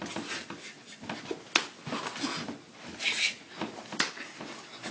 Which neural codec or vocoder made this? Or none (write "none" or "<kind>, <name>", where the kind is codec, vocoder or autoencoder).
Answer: none